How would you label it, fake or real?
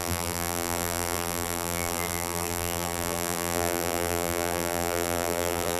fake